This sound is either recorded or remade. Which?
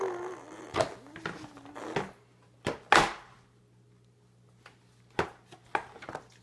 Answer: recorded